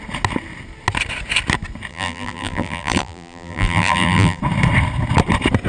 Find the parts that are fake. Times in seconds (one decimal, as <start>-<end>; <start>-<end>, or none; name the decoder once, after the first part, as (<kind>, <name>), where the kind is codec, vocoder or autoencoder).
1.9-4.4 (vocoder, BigVGAN v2)